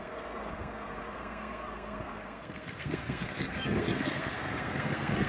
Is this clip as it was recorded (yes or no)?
no